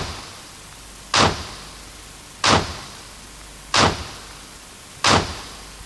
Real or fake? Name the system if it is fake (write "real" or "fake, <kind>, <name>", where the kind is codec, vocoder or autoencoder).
real